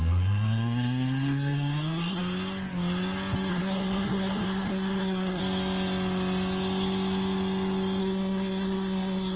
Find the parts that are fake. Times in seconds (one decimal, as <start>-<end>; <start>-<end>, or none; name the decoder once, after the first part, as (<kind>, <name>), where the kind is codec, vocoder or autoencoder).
0.0-2.2 (codec, SNAC); 3.5-5.4; 8.0-9.4